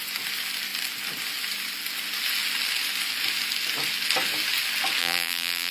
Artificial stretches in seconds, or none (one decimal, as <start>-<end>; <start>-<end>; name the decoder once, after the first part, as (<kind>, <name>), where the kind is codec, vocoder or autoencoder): 5.0-5.7 (vocoder, BigVGAN v2)